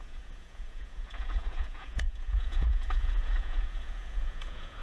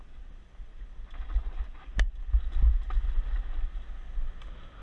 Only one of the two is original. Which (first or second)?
second